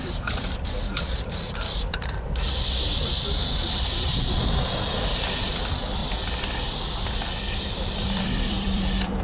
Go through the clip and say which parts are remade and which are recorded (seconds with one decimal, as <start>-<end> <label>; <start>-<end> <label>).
0.0-6.0 remade; 6.0-7.3 recorded; 7.3-9.2 remade